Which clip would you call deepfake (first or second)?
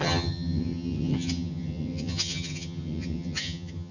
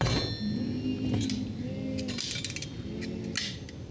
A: first